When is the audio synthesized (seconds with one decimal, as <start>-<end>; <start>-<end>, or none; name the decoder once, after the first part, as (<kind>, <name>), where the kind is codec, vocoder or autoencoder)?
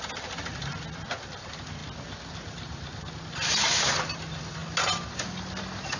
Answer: none